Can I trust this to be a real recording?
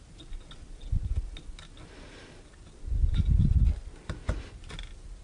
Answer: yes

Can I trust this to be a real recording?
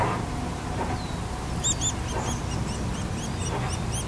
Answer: yes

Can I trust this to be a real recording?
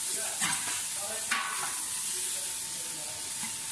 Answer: yes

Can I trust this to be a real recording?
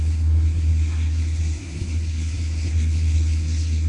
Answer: no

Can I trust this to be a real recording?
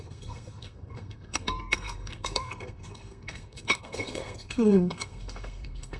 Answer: no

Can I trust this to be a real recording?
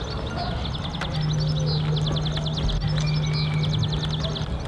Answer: yes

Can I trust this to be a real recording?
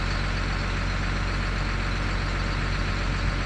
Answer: yes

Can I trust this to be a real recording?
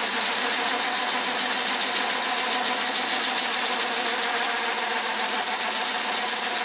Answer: yes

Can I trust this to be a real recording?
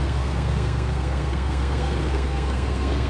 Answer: no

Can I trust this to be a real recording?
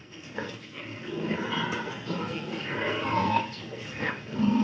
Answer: no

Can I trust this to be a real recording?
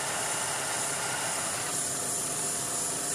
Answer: yes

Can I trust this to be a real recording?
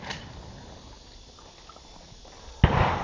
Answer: yes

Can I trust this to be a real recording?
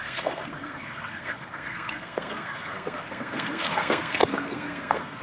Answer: no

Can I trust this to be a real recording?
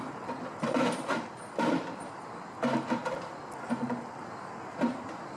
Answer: yes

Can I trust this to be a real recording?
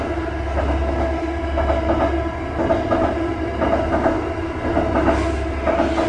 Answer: yes